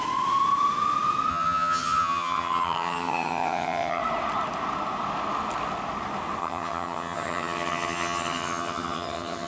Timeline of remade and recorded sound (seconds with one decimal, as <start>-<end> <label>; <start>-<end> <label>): 0.0-1.3 recorded; 1.3-4.0 remade; 4.0-6.4 recorded; 6.4-9.5 remade

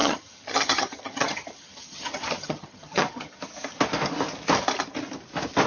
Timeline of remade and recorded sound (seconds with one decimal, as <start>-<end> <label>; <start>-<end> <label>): 0.0-3.4 remade; 3.4-5.7 recorded